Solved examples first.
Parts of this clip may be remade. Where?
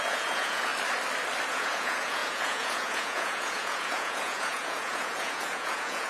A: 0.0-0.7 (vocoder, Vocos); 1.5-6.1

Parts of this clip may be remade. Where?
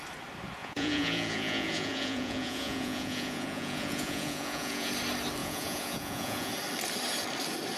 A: 0.6-4.9 (vocoder, Vocos); 5.4-6.5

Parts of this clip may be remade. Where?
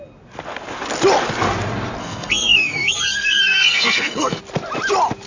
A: 2.0-4.4 (codec, SNAC)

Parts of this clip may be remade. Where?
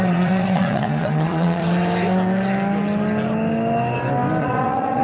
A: 0.0-1.6 (vocoder, Vocos); 4.4-5.0